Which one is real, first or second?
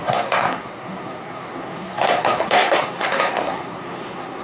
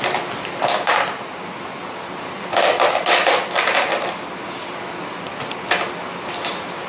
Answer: second